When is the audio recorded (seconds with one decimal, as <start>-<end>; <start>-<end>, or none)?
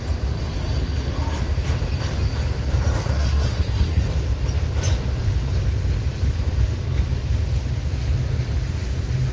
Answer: 0.0-3.0; 4.0-9.3